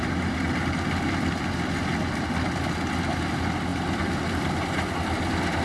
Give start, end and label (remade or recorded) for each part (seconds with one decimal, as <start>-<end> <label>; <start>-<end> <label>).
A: 0.0-3.7 recorded; 3.7-4.9 remade; 4.9-5.6 recorded